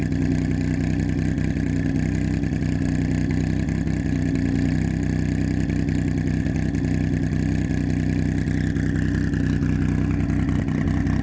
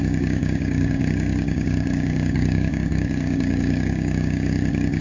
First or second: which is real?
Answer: first